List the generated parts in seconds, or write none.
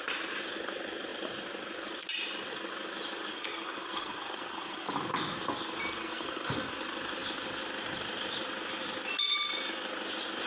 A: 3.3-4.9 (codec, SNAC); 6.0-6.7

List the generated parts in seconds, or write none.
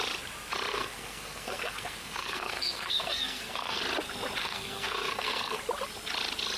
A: 0.7-3.8 (codec, SNAC); 4.4-5.6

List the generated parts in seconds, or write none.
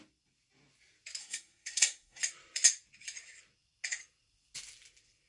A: 1.2-2.2 (codec, SNAC)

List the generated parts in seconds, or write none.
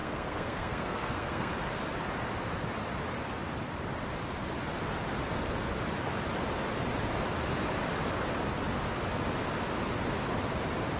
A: 0.0-1.5 (codec, SNAC)